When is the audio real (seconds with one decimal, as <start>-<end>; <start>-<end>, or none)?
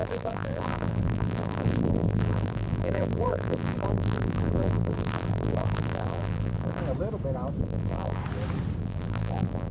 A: 6.8-7.6; 8.2-8.8